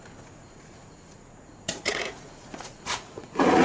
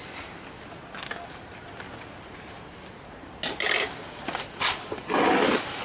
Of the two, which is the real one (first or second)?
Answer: second